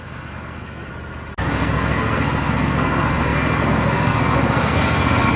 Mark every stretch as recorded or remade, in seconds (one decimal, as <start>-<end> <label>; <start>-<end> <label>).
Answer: 0.0-0.9 remade; 0.9-1.5 recorded; 1.5-5.4 remade